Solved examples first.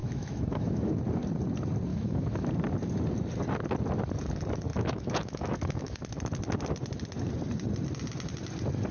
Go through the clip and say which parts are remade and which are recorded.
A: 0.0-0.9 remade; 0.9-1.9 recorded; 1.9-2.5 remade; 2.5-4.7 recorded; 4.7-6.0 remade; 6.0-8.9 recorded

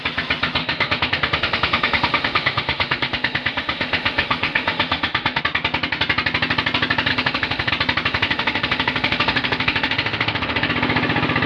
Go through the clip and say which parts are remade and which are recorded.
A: 0.0-0.6 recorded; 0.6-5.4 remade; 5.4-7.1 recorded; 7.1-7.7 remade; 7.7-8.1 recorded; 8.1-10.7 remade; 10.7-11.5 recorded

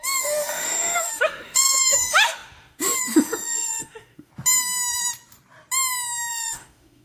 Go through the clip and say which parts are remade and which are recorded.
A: 0.0-4.3 remade; 4.3-6.3 recorded; 6.3-7.0 remade

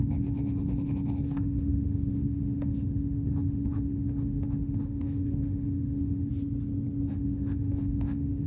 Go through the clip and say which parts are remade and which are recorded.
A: 0.0-6.3 remade; 6.3-7.1 recorded; 7.1-8.5 remade

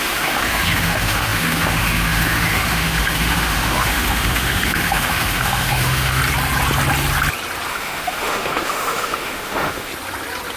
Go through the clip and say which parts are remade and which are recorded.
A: 0.0-6.2 remade; 6.2-7.7 recorded; 7.7-9.9 remade; 9.9-10.6 recorded

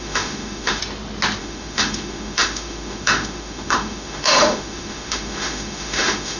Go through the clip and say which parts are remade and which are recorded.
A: 0.0-0.8 remade; 0.8-1.4 recorded; 1.4-6.4 remade

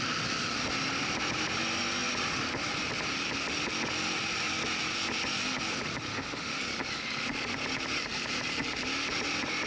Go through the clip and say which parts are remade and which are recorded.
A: 0.0-6.1 recorded; 6.1-6.6 remade; 6.6-9.7 recorded

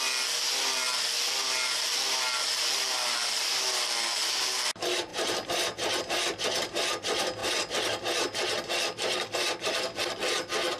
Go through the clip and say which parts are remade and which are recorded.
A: 0.0-10.8 recorded